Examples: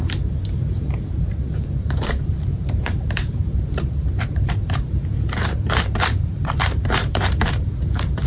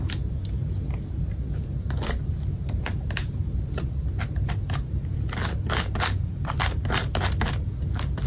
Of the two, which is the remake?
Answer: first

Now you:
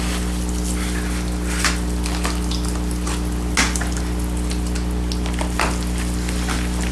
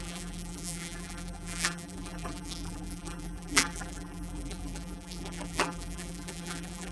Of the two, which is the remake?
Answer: second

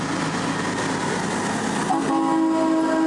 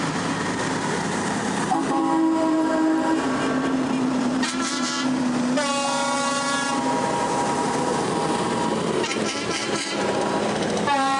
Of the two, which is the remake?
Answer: second